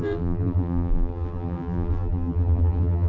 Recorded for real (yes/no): no